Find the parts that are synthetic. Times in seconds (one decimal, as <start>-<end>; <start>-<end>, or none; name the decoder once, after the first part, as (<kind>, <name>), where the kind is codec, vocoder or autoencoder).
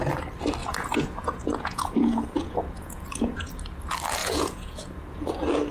0.6-3.6 (vocoder, Vocos); 4.2-5.3